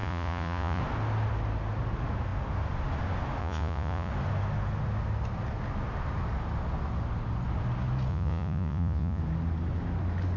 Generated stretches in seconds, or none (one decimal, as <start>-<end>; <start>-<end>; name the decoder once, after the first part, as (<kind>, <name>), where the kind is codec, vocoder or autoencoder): 0.0-0.8 (vocoder, Vocos); 3.4-4.1; 8.1-9.2

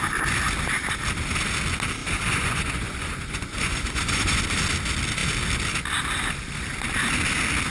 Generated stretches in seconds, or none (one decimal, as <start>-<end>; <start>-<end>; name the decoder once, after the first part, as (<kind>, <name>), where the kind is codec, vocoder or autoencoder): 2.0-4.4 (vocoder, Vocos)